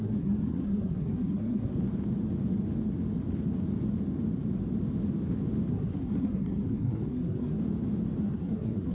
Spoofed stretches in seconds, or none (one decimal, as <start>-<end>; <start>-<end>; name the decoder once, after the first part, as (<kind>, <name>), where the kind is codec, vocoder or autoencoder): 0.0-1.7 (codec, SNAC); 5.7-7.6; 8.2-8.9